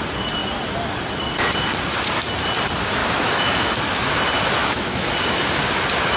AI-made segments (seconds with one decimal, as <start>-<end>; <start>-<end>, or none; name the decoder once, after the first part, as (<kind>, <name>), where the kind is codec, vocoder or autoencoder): 3.0-3.7 (autoencoder, DAC-VAE); 4.6-5.1